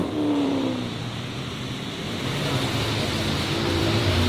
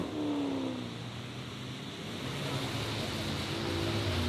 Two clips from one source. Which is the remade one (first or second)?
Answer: first